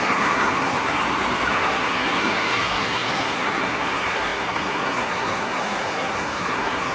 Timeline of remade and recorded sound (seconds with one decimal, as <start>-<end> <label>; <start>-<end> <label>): 0.0-1.0 remade; 1.0-1.5 recorded; 1.5-6.9 remade